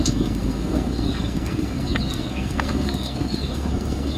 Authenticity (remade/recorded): remade